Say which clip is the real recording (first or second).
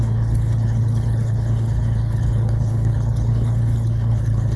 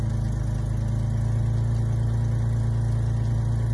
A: second